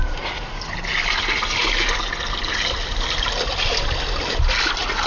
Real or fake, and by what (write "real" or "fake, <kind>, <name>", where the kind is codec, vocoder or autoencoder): real